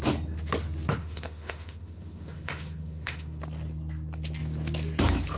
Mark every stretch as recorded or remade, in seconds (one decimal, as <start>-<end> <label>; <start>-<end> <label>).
0.0-1.0 recorded; 1.0-3.4 remade; 3.4-5.4 recorded